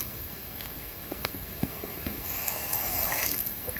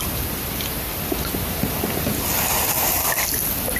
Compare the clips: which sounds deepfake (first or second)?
first